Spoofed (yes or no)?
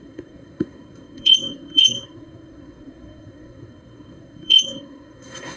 yes